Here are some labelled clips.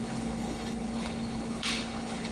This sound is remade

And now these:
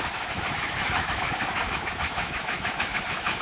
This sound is remade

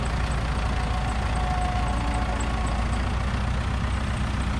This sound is recorded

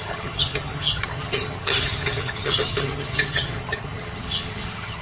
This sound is remade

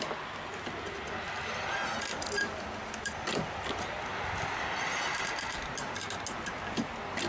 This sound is recorded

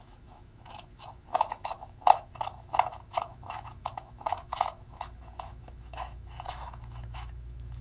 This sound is remade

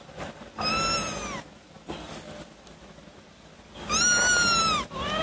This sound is recorded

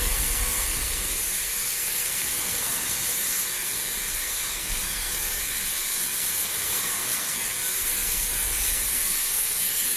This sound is remade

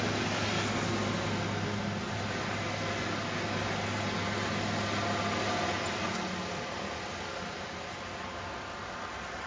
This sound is recorded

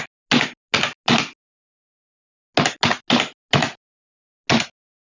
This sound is recorded